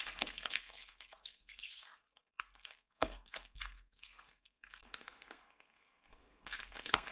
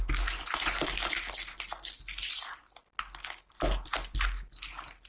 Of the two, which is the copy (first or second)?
first